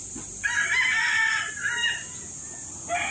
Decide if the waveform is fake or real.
real